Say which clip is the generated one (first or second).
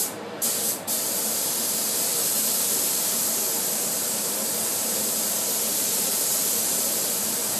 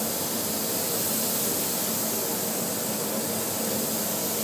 first